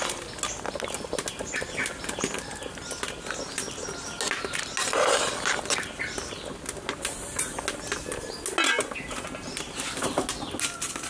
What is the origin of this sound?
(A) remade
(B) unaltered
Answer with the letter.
B